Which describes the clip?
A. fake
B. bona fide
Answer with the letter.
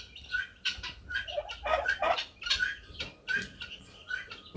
A